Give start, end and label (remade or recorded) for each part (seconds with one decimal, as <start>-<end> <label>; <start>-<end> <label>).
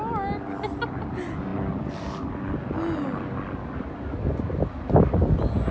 0.0-5.7 recorded